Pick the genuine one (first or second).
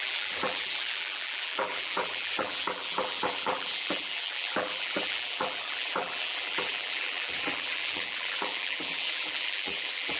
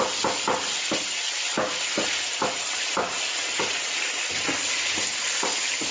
second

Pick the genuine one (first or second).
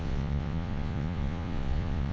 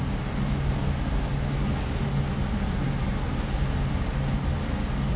second